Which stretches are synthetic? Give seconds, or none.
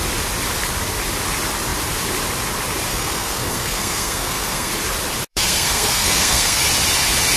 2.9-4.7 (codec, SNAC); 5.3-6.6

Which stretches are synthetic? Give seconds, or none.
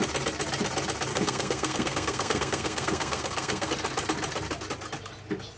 1.1-3.7 (codec, SNAC)